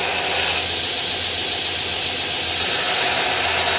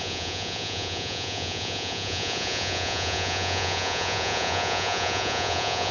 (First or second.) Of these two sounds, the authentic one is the first